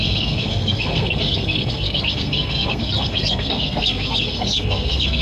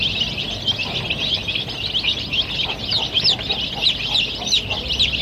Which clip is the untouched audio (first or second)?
second